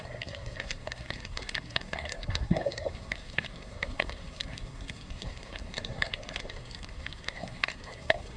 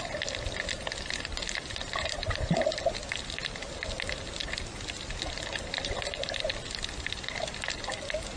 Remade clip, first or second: first